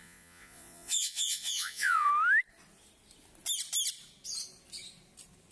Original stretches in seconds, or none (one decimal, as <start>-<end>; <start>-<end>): 2.1-5.5